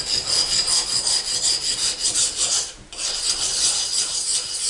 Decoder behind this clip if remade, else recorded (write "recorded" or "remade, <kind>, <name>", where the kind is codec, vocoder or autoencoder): recorded